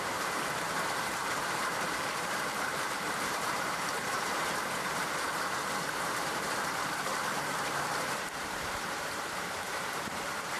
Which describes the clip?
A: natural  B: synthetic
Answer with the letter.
B